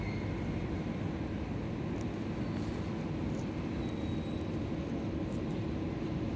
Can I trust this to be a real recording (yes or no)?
yes